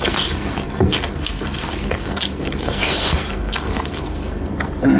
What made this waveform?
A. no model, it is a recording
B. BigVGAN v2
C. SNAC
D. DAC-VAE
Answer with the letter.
C